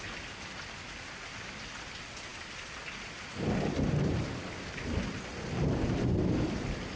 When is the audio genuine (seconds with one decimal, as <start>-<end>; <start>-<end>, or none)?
0.0-7.0

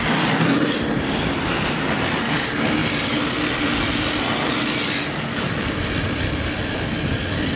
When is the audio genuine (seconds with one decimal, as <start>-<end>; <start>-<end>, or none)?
0.0-7.6

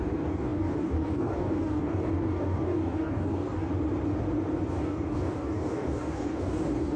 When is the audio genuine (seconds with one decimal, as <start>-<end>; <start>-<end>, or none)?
3.7-4.7

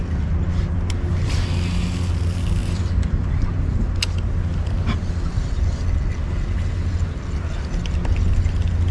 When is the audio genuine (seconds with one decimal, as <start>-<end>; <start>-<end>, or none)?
0.0-2.6; 3.5-8.9

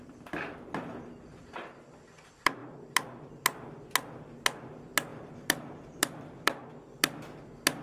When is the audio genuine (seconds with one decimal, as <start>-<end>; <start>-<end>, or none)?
0.0-5.1; 6.6-7.8

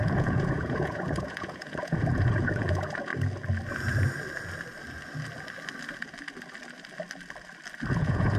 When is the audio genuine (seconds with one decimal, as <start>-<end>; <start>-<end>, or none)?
3.1-7.9

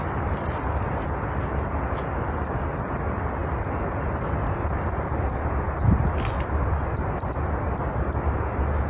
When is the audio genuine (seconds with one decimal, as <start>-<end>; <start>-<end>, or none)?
0.0-8.9